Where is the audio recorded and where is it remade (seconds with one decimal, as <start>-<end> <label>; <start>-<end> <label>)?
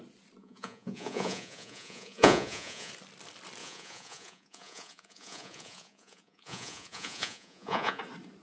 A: 0.0-0.4 recorded; 0.4-2.9 remade; 2.9-3.6 recorded; 3.6-8.0 remade; 8.0-8.4 recorded